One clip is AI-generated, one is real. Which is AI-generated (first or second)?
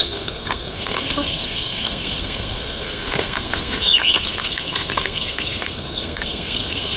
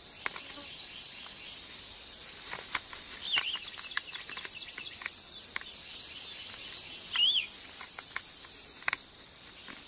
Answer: first